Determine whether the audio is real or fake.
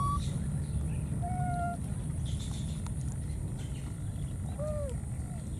real